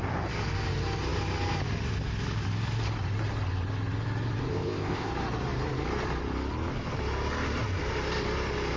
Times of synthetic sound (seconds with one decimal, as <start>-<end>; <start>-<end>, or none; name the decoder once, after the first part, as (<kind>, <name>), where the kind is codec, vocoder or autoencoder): 4.5-5.1 (codec, ZipCodec)